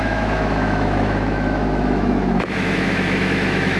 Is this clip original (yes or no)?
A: no